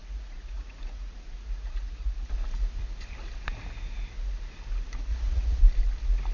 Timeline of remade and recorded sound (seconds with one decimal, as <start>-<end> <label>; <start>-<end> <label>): 0.0-2.3 remade; 2.3-5.1 recorded; 5.1-5.6 remade; 5.6-6.3 recorded